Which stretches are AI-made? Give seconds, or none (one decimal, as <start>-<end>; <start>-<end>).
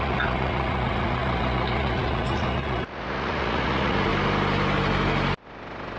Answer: 0.0-4.1